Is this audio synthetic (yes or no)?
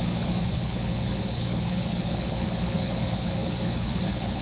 yes